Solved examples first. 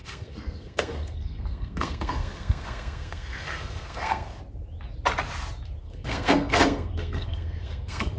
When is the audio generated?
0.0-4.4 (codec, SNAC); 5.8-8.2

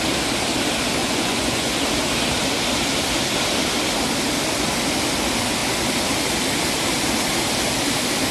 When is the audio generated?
1.0-1.7 (vocoder, Vocos)

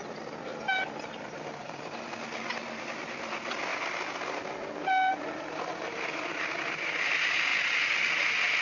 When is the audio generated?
0.5-1.8 (vocoder, BigVGAN v2)

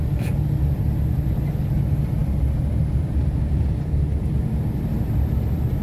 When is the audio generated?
none